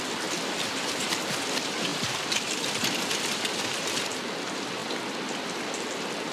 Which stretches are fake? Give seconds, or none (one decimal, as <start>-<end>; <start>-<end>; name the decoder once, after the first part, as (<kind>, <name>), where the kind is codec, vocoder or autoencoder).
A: 0.0-4.8 (vocoder, BigVGAN v2); 5.4-6.3